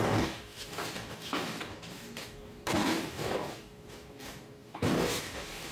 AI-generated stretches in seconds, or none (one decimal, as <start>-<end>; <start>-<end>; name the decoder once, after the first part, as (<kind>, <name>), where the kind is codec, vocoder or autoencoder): 0.0-5.7 (codec, DAC)